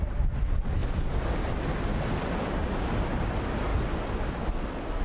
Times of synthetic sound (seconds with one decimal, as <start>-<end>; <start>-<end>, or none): 0.8-1.5; 2.6-3.2; 3.7-4.4